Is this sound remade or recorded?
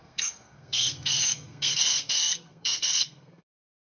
remade